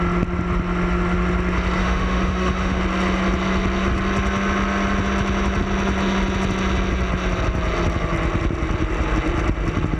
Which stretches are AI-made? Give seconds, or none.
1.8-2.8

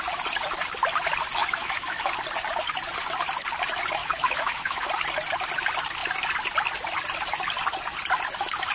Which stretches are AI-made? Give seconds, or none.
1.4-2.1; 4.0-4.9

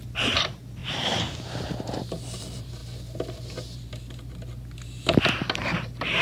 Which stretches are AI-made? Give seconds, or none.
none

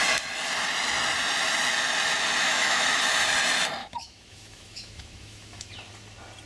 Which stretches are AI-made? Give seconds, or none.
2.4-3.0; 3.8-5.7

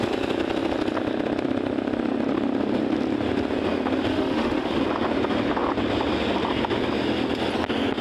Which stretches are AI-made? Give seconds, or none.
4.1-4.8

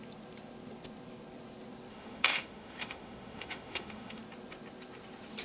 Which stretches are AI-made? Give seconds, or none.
1.9-4.2

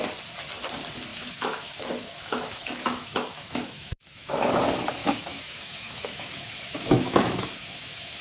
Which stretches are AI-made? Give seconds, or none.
1.1-4.5; 5.0-8.2